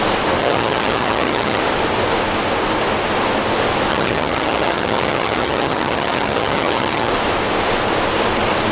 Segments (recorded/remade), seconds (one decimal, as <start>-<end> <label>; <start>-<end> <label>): 0.0-0.4 recorded; 0.4-1.6 remade; 1.6-3.9 recorded; 3.9-7.1 remade; 7.1-8.7 recorded